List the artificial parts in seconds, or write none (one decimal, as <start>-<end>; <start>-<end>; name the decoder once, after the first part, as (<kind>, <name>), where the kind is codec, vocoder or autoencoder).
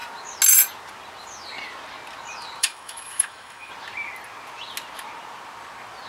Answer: 2.6-3.7 (autoencoder, DAC-VAE)